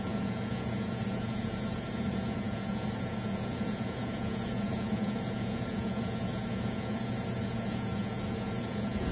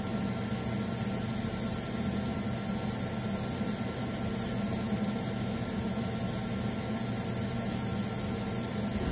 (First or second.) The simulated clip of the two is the first